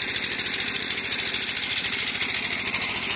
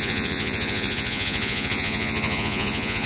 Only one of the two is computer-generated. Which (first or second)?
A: second